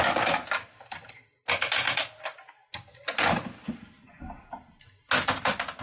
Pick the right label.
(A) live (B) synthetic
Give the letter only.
A